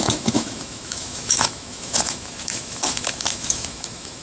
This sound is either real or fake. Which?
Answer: fake